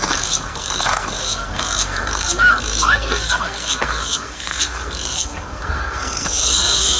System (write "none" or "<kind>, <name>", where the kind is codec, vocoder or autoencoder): codec, SNAC